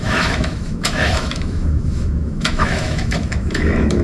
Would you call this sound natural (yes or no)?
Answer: no